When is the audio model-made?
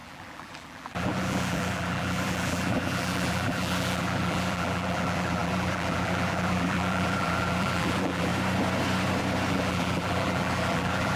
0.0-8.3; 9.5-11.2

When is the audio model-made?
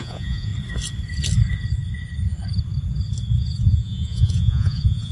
0.0-0.5; 3.4-5.1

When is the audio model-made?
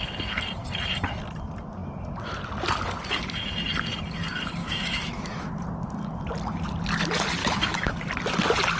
4.6-5.5; 7.4-8.0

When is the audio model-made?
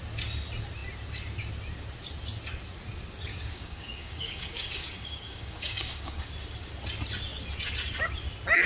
3.3-6.3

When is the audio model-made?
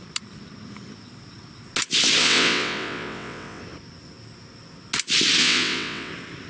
2.2-3.6; 5.4-6.1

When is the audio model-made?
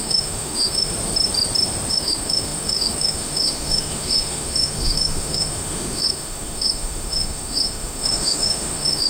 0.0-0.9; 1.9-9.1